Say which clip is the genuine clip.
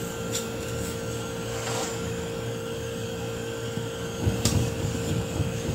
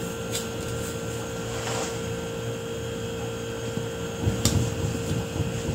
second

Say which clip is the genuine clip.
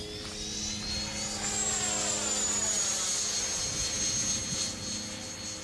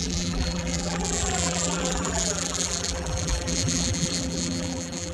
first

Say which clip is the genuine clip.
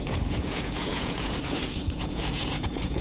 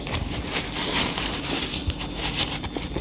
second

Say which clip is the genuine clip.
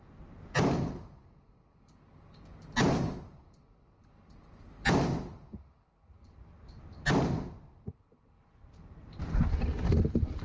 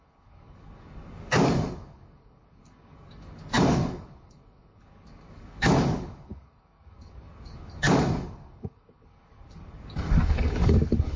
first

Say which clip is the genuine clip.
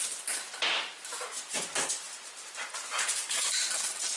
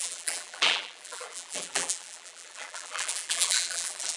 first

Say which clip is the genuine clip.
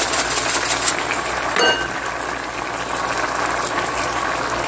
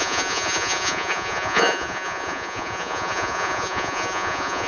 first